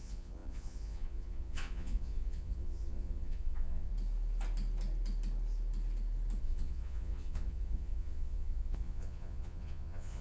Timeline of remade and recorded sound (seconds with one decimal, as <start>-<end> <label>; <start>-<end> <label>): 0.0-3.9 remade; 3.9-6.4 recorded; 6.4-10.2 remade

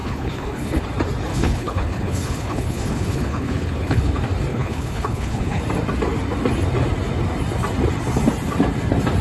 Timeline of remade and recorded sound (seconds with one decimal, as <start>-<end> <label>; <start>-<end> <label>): 0.0-0.8 remade; 0.8-1.3 recorded; 1.3-4.1 remade; 4.1-4.5 recorded; 4.5-5.6 remade; 5.6-9.2 recorded

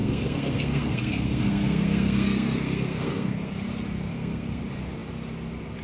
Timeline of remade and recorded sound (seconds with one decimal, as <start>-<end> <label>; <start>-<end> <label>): 0.0-3.5 remade; 3.5-4.1 recorded; 4.1-4.6 remade; 4.6-5.8 recorded

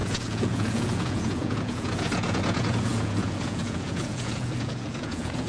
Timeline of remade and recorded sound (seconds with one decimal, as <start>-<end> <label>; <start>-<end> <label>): 0.0-5.5 remade

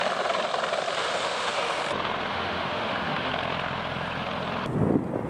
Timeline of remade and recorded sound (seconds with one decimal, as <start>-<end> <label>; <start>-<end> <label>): 0.0-1.0 recorded; 1.0-1.8 remade; 1.8-2.3 recorded; 2.3-3.3 remade; 3.3-5.3 recorded

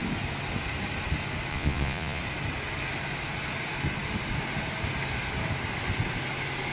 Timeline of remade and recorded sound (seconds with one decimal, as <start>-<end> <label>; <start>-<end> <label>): 0.0-1.5 recorded; 1.5-2.2 remade; 2.2-6.7 recorded

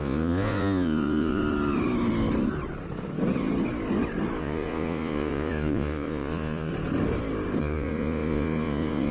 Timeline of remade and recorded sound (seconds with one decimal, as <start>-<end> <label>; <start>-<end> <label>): 0.0-1.4 remade; 1.4-4.4 recorded; 4.4-6.7 remade; 6.7-7.6 recorded; 7.6-9.1 remade